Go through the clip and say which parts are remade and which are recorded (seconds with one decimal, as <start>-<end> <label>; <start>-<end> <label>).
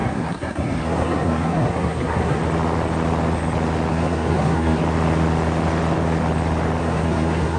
0.0-2.4 remade; 2.4-3.9 recorded; 3.9-4.8 remade; 4.8-6.8 recorded; 6.8-7.6 remade